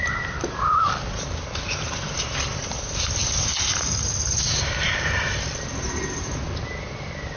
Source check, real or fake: real